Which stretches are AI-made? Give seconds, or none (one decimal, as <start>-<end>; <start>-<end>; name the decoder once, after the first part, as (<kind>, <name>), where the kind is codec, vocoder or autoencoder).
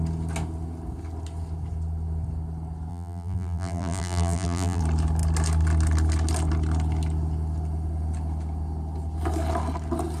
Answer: 2.9-4.8 (vocoder, BigVGAN v2)